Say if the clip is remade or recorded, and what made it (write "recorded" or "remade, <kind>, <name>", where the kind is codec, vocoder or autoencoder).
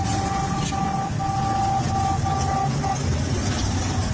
recorded